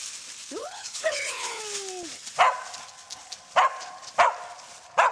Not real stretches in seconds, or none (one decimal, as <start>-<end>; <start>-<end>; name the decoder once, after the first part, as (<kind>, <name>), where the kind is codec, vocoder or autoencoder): 0.6-1.6 (codec, HILCodec)